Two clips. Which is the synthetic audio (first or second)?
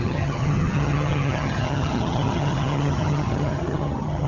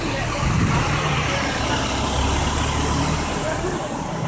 first